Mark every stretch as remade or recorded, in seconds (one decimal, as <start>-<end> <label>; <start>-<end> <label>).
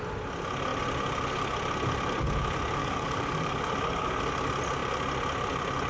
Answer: 0.0-2.8 recorded; 2.8-4.2 remade; 4.2-5.9 recorded